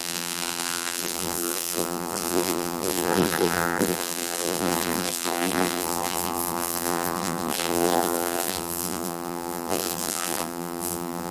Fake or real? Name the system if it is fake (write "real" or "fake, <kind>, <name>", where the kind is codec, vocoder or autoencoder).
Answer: fake, vocoder, BigVGAN v2